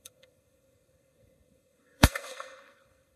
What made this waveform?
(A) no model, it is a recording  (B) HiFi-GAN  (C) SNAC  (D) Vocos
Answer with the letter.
C